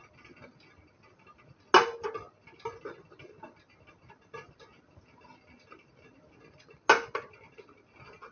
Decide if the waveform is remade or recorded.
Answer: recorded